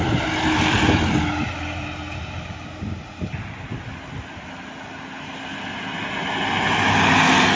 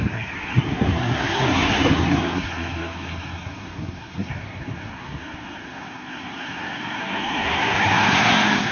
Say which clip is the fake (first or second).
second